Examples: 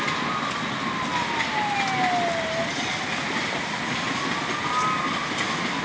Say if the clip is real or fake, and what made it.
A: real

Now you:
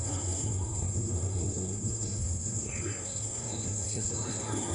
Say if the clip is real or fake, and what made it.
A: fake, codec, SNAC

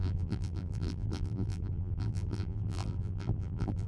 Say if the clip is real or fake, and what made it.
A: fake, vocoder, BigVGAN v2